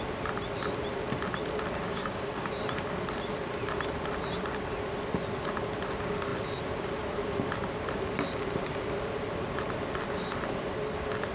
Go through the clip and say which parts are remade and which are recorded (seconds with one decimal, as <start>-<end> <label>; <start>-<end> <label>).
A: 0.0-1.9 recorded; 1.9-2.5 remade; 2.5-11.3 recorded